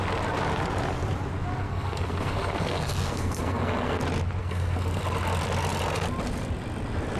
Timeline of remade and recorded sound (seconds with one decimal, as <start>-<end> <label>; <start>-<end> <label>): 0.0-1.6 recorded; 1.6-4.0 remade; 4.0-4.4 recorded; 4.4-5.0 remade; 5.0-7.2 recorded